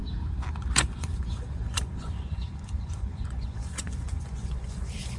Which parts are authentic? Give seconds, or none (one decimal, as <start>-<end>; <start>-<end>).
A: 0.0-0.7